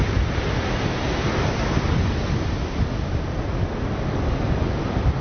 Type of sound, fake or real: real